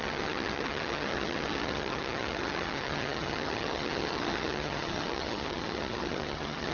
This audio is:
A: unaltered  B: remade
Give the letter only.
B